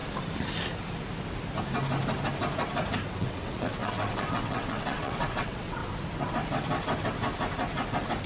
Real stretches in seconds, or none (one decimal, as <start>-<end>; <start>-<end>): 0.0-3.1; 5.8-8.3